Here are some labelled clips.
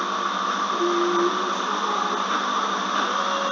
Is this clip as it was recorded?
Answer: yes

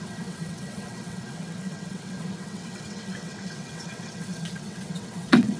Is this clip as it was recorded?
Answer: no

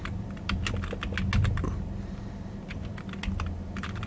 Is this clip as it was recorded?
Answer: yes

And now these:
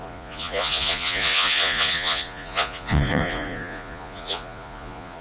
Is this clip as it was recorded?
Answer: no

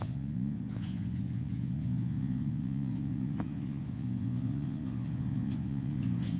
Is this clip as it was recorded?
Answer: no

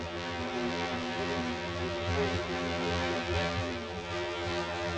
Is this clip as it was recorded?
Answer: no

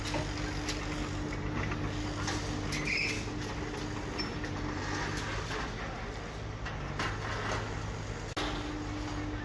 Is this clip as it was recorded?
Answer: yes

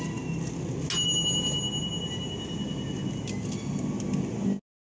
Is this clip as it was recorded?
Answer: yes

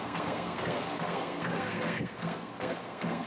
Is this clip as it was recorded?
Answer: no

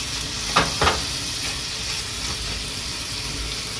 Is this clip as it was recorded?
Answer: yes